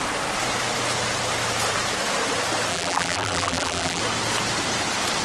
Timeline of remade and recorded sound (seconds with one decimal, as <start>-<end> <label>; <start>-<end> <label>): 0.0-2.7 recorded; 2.7-4.0 remade; 4.0-5.2 recorded